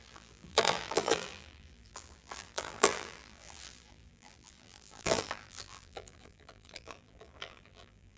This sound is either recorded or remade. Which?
remade